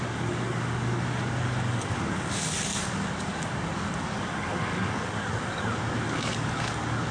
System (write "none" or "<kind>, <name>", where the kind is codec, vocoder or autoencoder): codec, DAC